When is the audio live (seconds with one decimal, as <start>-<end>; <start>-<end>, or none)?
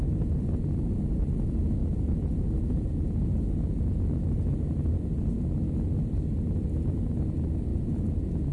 0.0-1.8; 4.2-7.7